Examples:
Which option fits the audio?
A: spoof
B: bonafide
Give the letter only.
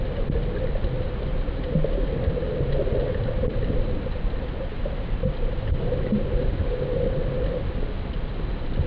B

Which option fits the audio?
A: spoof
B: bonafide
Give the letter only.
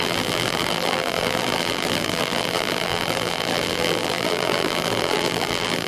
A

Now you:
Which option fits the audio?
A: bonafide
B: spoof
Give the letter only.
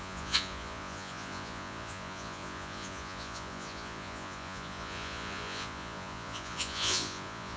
B